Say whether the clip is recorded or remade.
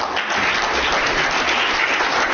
recorded